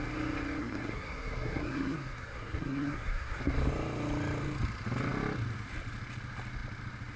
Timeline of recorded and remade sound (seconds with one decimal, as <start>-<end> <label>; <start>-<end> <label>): 0.0-0.6 recorded; 0.6-3.4 remade; 3.4-7.2 recorded